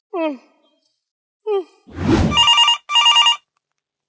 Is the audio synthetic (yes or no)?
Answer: no